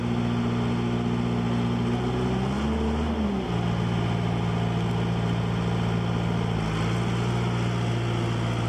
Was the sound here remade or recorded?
recorded